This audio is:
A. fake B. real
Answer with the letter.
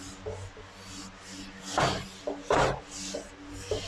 B